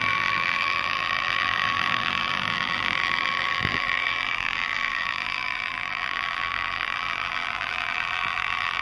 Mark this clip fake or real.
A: fake